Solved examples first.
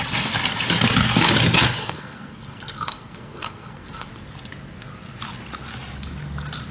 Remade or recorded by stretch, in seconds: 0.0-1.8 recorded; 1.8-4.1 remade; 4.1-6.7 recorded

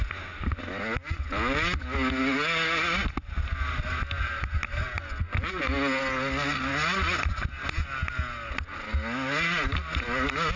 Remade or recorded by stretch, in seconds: 0.0-10.6 recorded

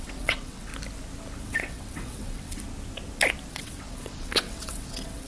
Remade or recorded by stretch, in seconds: 0.0-0.7 remade; 0.7-1.4 recorded; 1.4-2.6 remade; 2.6-3.5 recorded; 3.5-5.3 remade

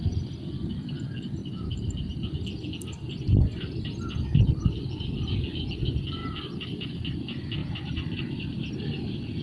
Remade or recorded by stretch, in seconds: 0.0-1.4 recorded; 1.4-2.3 remade; 2.3-7.6 recorded; 7.6-8.7 remade; 8.7-9.4 recorded

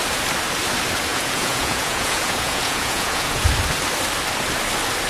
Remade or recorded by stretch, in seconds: 0.0-1.1 recorded; 1.1-3.5 remade; 3.5-5.1 recorded